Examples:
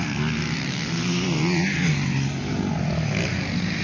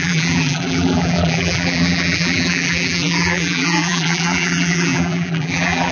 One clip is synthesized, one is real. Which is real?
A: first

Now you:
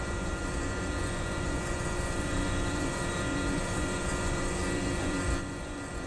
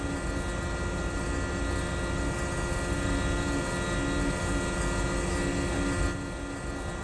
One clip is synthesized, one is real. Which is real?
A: second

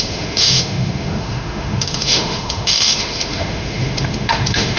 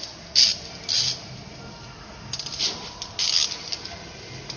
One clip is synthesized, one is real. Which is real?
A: second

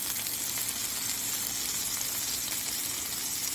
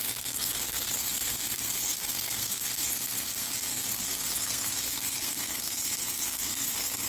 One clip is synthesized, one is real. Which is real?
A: first